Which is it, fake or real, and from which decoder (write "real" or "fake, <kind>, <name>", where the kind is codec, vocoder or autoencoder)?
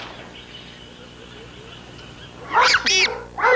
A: real